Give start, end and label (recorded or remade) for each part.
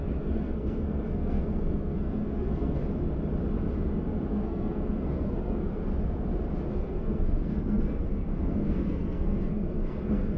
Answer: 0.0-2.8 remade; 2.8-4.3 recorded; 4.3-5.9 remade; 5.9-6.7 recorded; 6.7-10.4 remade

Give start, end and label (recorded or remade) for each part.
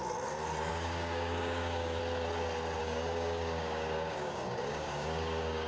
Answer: 0.0-0.7 recorded; 0.7-2.0 remade; 2.0-2.8 recorded; 2.8-5.7 remade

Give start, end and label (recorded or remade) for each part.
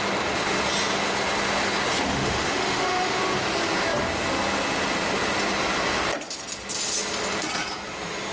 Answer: 0.0-2.1 recorded; 2.1-3.2 remade; 3.2-8.3 recorded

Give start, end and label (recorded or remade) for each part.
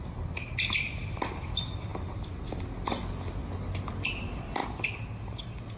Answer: 0.0-5.8 recorded